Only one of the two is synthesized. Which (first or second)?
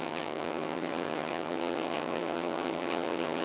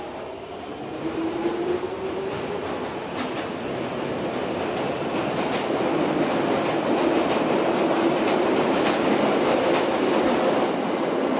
first